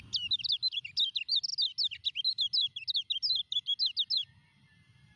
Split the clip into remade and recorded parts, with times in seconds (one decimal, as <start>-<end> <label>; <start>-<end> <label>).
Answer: 0.0-5.2 recorded